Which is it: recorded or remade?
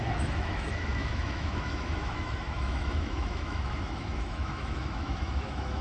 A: remade